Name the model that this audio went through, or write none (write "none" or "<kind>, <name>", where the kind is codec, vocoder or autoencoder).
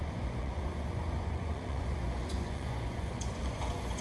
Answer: vocoder, Vocos